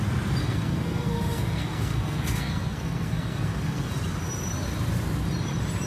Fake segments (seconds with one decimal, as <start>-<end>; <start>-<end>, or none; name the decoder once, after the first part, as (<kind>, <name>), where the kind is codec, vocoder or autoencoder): 0.4-3.9 (codec, SNAC)

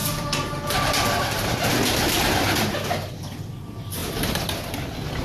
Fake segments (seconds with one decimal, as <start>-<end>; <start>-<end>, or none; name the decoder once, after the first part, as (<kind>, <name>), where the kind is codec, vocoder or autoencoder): none

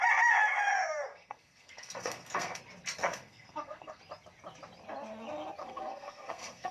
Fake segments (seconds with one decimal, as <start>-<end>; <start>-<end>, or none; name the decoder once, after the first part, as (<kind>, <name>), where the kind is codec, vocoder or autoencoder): 1.1-2.6 (codec, SNAC); 3.0-4.0; 5.6-6.7

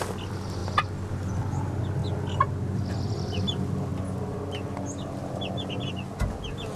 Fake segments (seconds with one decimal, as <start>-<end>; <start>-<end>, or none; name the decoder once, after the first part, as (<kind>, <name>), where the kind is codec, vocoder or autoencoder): none

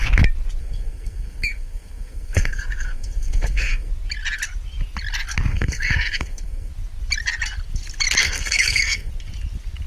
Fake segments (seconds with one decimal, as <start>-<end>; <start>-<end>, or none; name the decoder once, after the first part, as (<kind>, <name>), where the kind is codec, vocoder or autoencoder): 0.6-3.9 (codec, SNAC); 5.5-6.7; 8.2-9.1

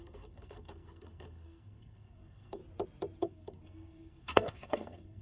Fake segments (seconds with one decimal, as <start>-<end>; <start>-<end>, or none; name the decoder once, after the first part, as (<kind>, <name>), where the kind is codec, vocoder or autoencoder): 0.0-2.6 (codec, SNAC); 3.2-5.2